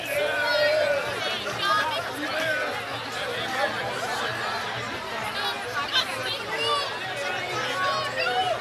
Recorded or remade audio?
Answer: recorded